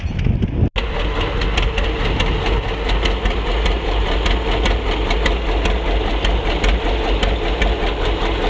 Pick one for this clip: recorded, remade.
recorded